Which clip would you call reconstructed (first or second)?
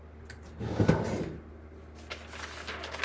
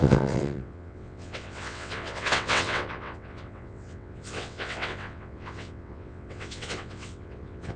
second